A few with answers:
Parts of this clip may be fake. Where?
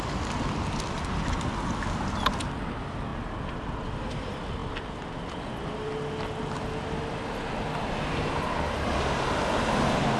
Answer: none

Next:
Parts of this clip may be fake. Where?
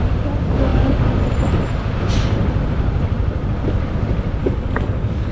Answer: 4.4-5.3 (codec, DAC)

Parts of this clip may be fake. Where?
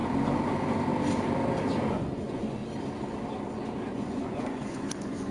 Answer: 1.9-2.6 (vocoder, Vocos); 3.9-5.3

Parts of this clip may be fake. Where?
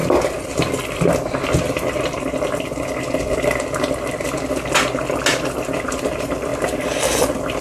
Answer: none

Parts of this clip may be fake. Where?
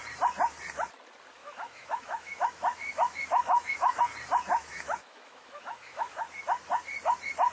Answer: 1.4-4.0 (autoencoder, DAC-VAE); 4.5-6.2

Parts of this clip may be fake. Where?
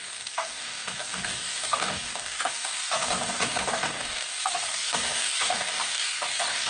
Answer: 0.0-6.7 (codec, DAC)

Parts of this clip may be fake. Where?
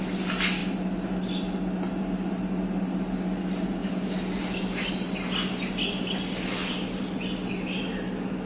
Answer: none